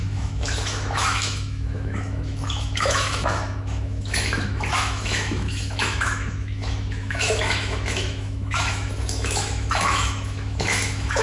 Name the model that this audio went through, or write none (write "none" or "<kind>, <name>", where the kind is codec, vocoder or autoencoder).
autoencoder, DAC-VAE